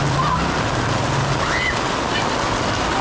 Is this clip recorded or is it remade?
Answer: recorded